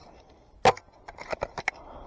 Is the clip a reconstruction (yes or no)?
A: no